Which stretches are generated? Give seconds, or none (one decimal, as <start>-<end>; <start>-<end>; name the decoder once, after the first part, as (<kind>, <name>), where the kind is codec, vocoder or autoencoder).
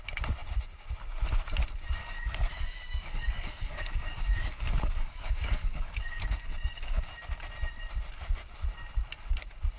2.0-7.1 (codec, DAC)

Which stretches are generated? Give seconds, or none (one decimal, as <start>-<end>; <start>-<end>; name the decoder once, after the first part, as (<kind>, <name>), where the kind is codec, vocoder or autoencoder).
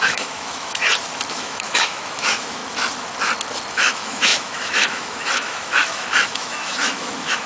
0.0-0.8 (autoencoder, DAC-VAE); 1.3-2.6; 3.7-7.5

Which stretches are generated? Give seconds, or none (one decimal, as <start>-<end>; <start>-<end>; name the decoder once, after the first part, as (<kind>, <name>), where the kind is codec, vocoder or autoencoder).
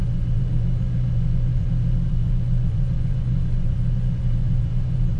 0.0-1.7 (vocoder, Vocos); 2.1-5.2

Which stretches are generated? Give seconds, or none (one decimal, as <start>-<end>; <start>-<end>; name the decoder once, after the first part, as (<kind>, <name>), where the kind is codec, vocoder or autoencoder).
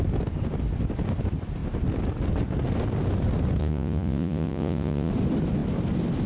3.6-5.1 (vocoder, Vocos)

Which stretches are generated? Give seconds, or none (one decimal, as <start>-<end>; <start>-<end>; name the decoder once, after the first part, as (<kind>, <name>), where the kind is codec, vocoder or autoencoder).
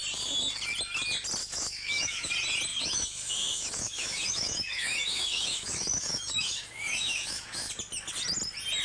1.4-2.3 (autoencoder, DAC-VAE); 2.7-7.7